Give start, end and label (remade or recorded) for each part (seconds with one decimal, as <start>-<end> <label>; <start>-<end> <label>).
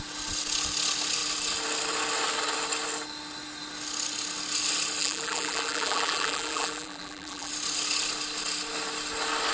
0.0-5.0 recorded; 5.0-7.5 remade; 7.5-9.5 recorded